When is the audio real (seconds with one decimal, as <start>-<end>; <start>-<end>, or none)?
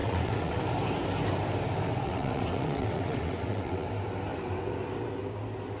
0.6-1.9; 3.9-5.8